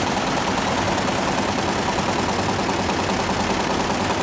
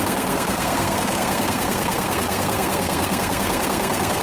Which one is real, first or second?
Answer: first